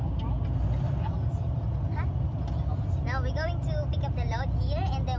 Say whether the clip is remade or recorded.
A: recorded